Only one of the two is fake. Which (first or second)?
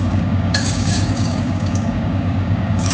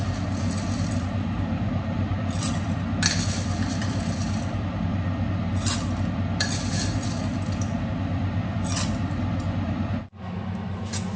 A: first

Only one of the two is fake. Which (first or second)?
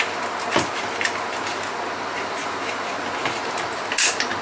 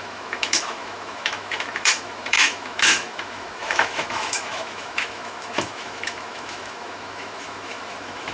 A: second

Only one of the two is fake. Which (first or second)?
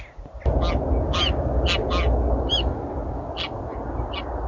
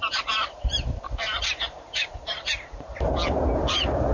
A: second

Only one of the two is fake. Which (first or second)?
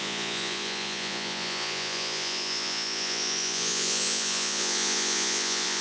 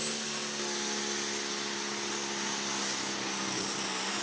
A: first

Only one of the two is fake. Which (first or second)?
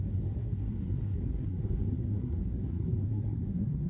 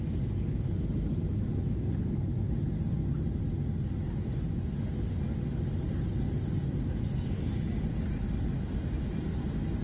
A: first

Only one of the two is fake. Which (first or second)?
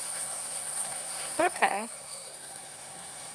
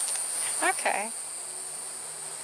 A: first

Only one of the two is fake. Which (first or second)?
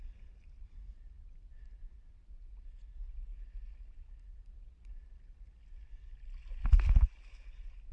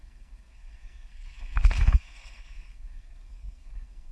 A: second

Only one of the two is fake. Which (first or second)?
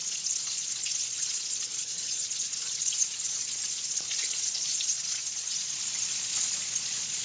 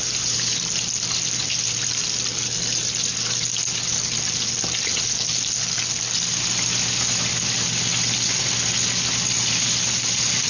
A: first